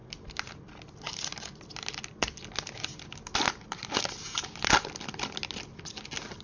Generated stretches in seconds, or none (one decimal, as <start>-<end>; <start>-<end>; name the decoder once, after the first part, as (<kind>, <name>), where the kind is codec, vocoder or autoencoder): none